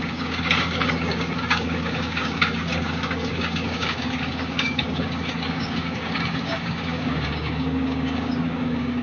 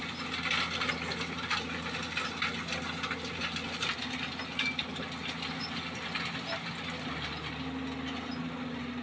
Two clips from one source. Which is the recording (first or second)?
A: second